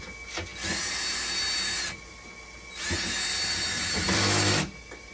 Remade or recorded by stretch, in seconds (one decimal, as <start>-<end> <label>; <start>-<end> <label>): 0.0-5.1 recorded